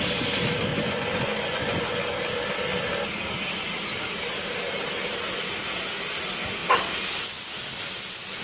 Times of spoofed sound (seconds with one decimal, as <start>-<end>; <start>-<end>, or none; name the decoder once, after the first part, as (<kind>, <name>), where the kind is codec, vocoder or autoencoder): 0.7-1.9 (vocoder, Vocos)